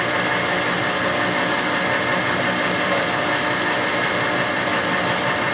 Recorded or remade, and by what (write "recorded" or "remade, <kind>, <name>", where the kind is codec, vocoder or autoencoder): recorded